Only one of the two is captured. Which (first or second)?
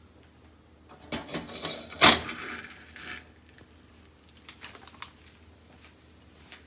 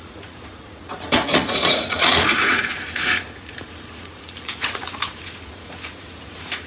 first